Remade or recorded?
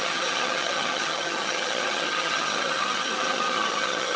remade